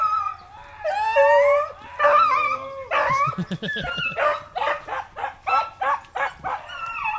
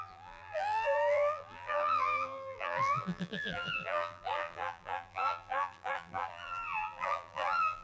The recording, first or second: first